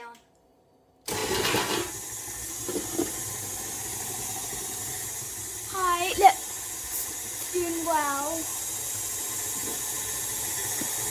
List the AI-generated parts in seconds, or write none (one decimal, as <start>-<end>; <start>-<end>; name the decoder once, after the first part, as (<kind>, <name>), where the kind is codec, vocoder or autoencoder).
none